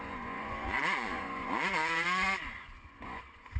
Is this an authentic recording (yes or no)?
no